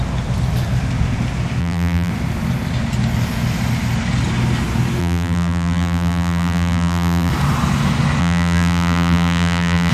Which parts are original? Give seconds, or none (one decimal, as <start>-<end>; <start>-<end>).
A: 0.0-1.6; 2.1-5.0; 7.3-8.2